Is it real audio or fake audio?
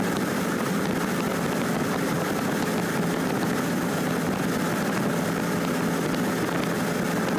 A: real